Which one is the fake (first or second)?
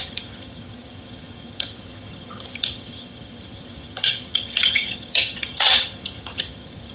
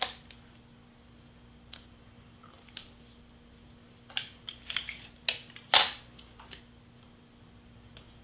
first